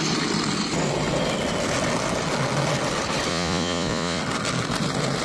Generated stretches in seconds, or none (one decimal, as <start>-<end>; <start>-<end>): 3.3-4.2